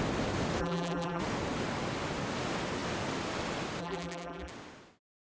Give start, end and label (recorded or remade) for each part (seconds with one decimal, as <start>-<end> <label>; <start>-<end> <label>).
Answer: 0.0-0.6 recorded; 0.6-1.2 remade; 1.2-3.8 recorded; 3.8-4.5 remade; 4.5-5.4 recorded